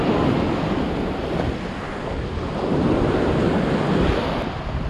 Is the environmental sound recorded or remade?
recorded